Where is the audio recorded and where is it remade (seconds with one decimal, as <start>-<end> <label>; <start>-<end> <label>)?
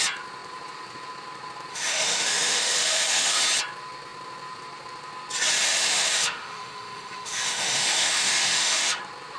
0.0-1.7 recorded; 1.7-3.4 remade; 3.4-5.6 recorded; 5.6-9.0 remade; 9.0-9.4 recorded